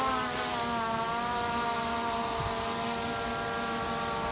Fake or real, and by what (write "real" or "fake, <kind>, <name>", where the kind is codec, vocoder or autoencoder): real